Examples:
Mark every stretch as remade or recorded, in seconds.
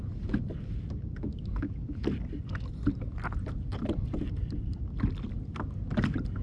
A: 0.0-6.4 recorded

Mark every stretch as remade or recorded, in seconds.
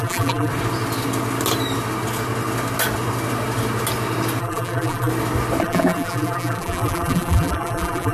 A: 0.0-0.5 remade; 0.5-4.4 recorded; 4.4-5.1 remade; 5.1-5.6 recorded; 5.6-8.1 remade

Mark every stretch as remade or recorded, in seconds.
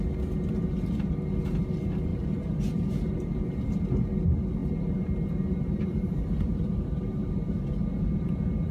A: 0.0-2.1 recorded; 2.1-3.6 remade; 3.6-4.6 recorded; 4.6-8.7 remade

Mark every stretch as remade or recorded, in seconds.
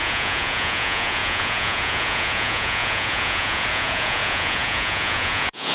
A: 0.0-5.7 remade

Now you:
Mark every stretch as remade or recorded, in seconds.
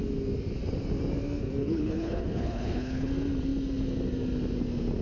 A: 0.0-1.6 recorded; 1.6-3.1 remade; 3.1-5.0 recorded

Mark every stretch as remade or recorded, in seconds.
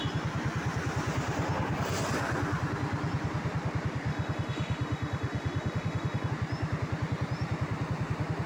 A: 0.0-4.1 recorded; 4.1-6.3 remade; 6.3-8.5 recorded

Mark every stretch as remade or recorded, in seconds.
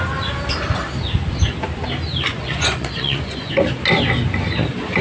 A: 0.0-2.3 recorded; 2.3-3.5 remade; 3.5-5.0 recorded